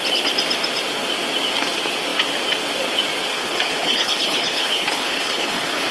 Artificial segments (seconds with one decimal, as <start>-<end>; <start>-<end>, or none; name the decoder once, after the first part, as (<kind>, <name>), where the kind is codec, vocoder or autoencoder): 3.3-5.9 (codec, HILCodec)